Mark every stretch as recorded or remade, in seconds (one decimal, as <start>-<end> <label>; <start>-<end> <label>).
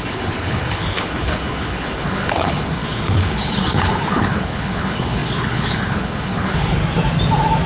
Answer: 0.0-6.8 remade; 6.8-7.7 recorded